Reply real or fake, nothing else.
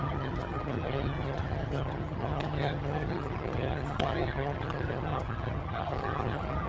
fake